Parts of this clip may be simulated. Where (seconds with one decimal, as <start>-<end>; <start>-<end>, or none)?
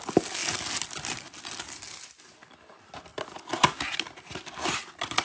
none